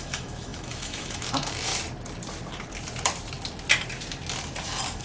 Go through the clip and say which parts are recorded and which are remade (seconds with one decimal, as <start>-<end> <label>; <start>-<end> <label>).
0.0-1.7 remade; 1.7-5.0 recorded